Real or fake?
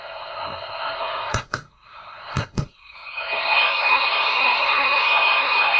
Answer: fake